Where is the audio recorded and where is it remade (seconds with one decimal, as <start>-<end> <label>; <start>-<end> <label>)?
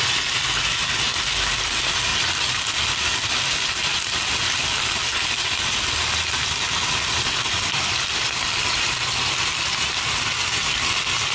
0.0-11.3 recorded